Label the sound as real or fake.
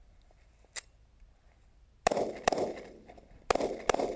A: real